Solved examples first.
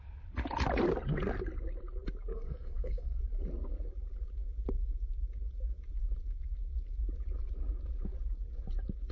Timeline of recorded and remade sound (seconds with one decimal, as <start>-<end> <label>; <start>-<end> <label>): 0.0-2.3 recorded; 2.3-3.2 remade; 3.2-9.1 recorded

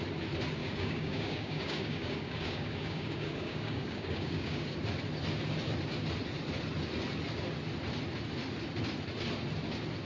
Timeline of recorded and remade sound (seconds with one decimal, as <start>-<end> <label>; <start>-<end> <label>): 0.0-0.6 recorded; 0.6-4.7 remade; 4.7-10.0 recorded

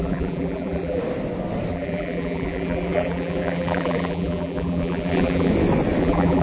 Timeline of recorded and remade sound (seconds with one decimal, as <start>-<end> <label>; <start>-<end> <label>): 0.0-1.0 remade; 1.0-1.7 recorded; 1.7-5.5 remade; 5.5-6.0 recorded; 6.0-6.4 remade

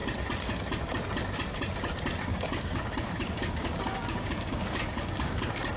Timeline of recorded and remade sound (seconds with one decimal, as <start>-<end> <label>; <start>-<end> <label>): 0.0-2.3 recorded; 2.3-5.8 remade

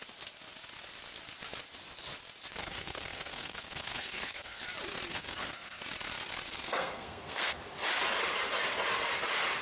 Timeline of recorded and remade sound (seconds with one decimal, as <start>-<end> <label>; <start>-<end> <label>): 0.0-2.6 recorded; 2.6-4.6 remade; 4.6-5.1 recorded; 5.1-5.8 remade; 5.8-6.6 recorded; 6.6-7.6 remade; 7.6-9.6 recorded

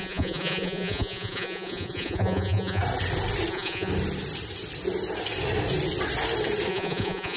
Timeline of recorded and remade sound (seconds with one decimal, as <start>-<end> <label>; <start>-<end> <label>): 0.0-2.8 remade; 2.8-3.5 recorded; 3.5-3.9 remade; 3.9-6.7 recorded; 6.7-7.4 remade